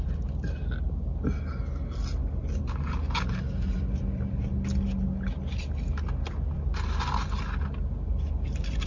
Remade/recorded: recorded